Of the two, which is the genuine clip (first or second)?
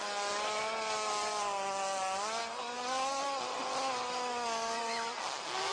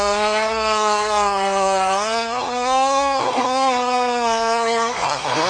first